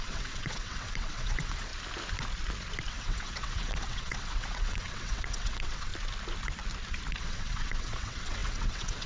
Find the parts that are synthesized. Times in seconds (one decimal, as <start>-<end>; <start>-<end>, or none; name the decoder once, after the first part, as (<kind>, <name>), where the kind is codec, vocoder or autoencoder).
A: 0.0-1.7 (vocoder, WaveNeXt); 2.9-5.9; 7.2-9.1